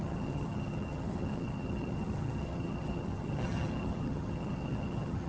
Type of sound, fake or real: fake